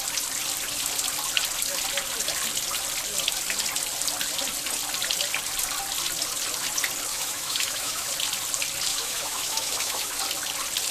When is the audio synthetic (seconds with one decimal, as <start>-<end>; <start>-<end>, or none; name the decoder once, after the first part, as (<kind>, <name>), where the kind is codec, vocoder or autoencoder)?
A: 7.1-8.1 (autoencoder, DAC-VAE); 8.9-10.2